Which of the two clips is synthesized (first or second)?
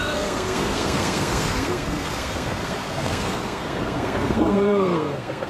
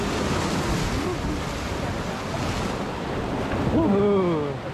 first